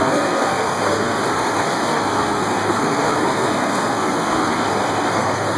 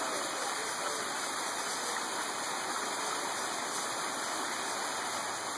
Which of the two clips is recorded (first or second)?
second